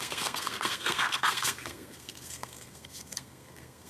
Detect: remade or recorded remade